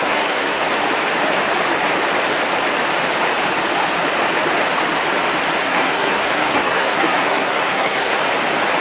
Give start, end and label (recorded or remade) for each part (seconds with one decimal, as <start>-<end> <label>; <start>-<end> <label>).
0.0-0.6 remade; 0.6-5.6 recorded; 5.6-8.2 remade; 8.2-8.8 recorded